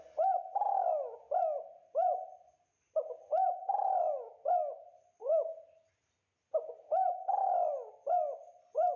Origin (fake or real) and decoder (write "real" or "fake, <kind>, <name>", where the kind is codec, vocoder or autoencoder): real